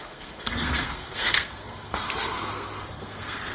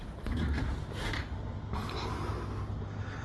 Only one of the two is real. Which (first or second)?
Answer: second